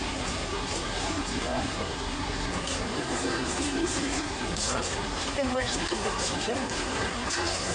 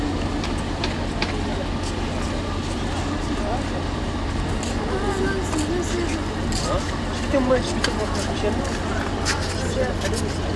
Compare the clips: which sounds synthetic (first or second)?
first